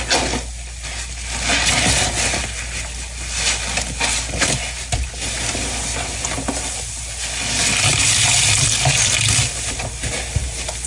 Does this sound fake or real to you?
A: real